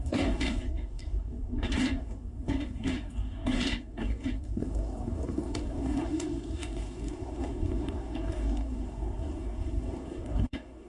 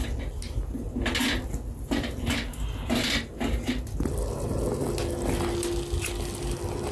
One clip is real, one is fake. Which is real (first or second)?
second